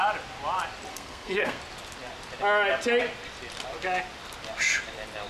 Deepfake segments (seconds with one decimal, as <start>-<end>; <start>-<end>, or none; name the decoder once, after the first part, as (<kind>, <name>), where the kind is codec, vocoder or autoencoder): 0.9-1.6 (codec, SNAC)